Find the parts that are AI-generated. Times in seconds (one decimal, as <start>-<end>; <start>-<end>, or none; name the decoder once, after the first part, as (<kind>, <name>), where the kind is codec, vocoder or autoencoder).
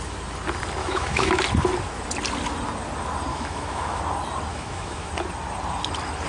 0.8-1.4 (autoencoder, DAC-VAE); 3.3-4.0; 4.5-5.1